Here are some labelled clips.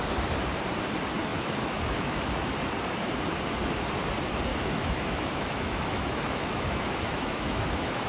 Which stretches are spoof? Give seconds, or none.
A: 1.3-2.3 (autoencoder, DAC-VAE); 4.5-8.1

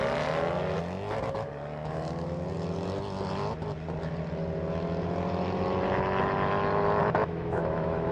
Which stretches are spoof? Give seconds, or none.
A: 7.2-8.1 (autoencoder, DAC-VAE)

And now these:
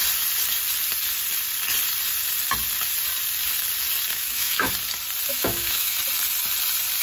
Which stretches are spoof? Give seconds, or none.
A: 4.1-4.7 (autoencoder, DAC-VAE); 5.3-6.0

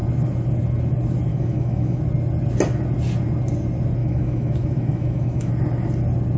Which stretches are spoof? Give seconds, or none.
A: 1.3-2.0 (autoencoder, DAC-VAE); 4.0-5.5

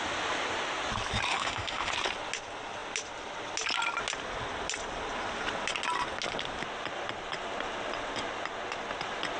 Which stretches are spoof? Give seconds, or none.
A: 1.3-1.9 (autoencoder, DAC-VAE)